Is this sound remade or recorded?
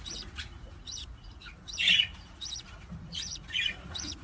remade